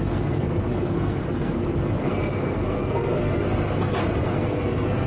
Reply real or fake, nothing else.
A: fake